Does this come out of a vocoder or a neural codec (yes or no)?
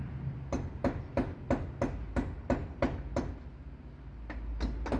no